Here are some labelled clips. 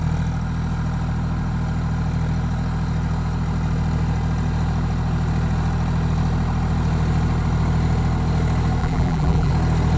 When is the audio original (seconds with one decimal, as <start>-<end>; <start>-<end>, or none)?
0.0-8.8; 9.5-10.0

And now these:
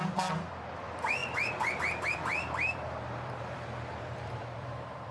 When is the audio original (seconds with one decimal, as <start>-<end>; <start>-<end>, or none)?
none

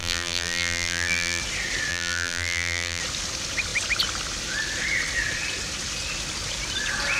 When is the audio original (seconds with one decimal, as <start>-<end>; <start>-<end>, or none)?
1.4-1.9; 3.0-7.2

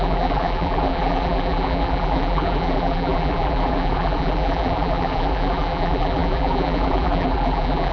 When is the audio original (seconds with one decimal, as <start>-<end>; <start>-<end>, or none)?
none

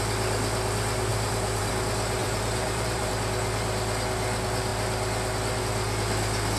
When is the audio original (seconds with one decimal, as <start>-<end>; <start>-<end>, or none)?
0.0-1.1; 1.7-2.2; 3.1-6.6

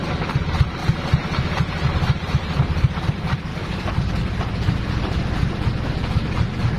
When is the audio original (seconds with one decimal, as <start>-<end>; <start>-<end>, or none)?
0.8-1.6; 3.5-4.2; 5.4-6.2

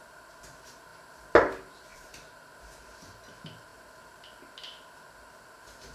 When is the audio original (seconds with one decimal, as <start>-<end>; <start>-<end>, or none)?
0.0-1.9; 2.5-5.9